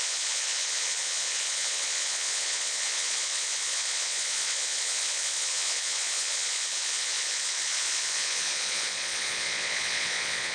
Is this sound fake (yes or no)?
yes